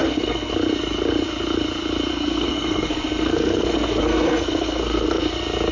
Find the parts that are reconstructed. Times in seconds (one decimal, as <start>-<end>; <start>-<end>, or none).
0.0-0.5; 2.1-5.3